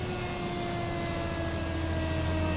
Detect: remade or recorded recorded